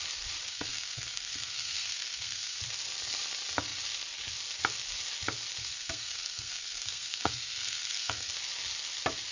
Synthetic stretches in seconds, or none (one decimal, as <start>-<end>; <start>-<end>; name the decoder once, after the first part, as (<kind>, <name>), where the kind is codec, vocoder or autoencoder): 0.5-2.6 (codec, SNAC); 5.6-8.3